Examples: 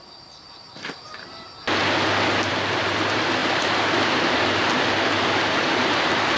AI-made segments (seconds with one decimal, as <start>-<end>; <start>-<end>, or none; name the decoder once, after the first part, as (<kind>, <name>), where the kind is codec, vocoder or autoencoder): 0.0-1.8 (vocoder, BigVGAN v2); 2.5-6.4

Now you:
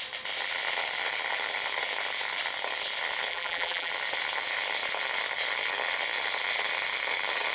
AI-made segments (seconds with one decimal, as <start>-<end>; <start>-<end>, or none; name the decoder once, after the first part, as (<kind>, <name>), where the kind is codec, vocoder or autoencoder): 3.3-3.9 (vocoder, BigVGAN v2)

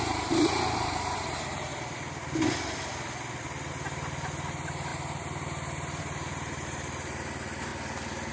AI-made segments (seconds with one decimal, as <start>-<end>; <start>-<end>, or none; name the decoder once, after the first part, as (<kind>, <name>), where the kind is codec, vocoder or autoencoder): 0.0-1.7 (vocoder, BigVGAN v2); 3.7-7.7